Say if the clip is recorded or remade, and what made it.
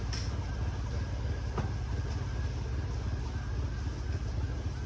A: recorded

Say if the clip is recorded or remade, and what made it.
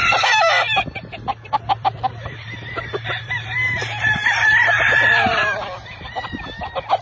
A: remade, vocoder, BigVGAN v2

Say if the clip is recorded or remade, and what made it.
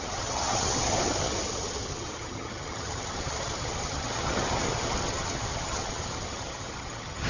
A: remade, vocoder, HiFi-GAN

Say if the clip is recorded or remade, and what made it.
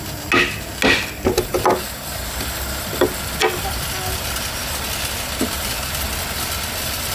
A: recorded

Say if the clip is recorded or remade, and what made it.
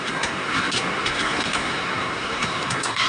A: remade, codec, SNAC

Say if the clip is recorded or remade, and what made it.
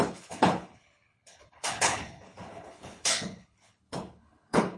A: remade, codec, HILCodec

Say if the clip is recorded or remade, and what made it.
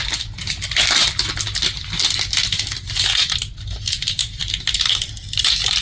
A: recorded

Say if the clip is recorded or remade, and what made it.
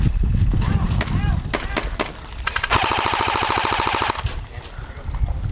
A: recorded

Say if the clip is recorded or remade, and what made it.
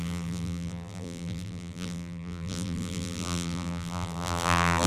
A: remade, vocoder, BigVGAN v2